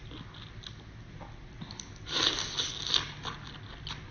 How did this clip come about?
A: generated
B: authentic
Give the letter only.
B